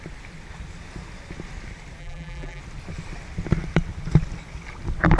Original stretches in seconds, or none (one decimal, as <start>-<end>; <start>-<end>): 0.0-2.0; 2.6-5.2